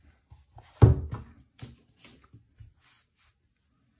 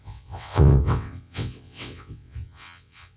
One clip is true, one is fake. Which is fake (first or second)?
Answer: second